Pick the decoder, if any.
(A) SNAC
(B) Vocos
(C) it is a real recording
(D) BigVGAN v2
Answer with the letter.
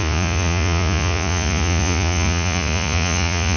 B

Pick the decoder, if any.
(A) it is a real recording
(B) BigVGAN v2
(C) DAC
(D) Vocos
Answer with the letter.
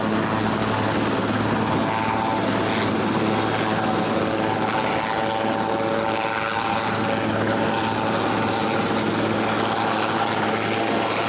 A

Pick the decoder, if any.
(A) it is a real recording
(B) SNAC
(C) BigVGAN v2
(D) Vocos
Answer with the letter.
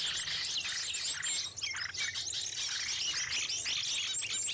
A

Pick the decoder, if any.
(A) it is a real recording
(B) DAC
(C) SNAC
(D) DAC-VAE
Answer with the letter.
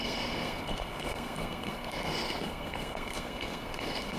C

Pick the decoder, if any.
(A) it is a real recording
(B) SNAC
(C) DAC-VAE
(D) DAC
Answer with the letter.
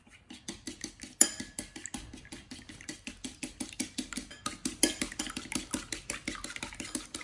A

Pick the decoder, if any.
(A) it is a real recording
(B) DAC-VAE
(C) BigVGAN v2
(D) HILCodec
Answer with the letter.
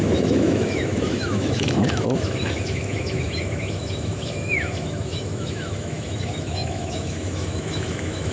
B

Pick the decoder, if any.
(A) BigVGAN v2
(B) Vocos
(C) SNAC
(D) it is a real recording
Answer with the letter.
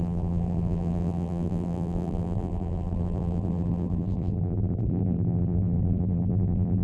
A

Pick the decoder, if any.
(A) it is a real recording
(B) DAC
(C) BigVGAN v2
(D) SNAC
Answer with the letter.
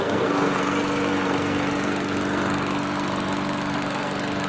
D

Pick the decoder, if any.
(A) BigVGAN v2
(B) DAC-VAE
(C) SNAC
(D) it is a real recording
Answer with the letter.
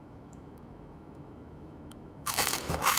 B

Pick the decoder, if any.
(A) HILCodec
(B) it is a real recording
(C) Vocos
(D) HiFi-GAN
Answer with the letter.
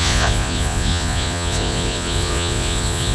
C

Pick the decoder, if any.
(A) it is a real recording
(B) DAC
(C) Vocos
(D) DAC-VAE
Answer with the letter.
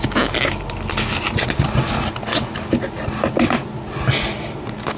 A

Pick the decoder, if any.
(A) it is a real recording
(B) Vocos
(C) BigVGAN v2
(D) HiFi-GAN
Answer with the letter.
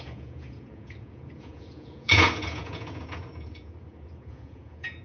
B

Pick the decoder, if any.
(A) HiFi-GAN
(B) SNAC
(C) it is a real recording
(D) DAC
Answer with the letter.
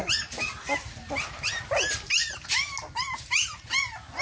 C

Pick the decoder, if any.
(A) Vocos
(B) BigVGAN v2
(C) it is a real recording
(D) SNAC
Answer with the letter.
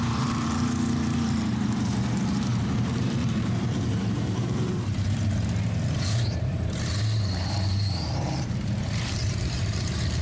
B